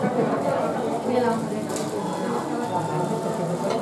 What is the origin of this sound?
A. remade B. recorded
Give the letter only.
B